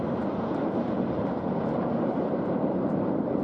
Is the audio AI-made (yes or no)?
yes